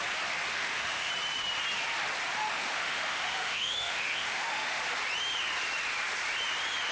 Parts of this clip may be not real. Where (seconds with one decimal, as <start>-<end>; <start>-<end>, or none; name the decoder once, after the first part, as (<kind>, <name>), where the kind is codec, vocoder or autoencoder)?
0.5-1.1 (autoencoder, DAC-VAE); 2.4-4.8